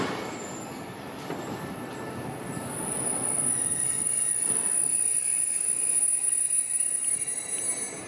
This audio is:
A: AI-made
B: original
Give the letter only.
B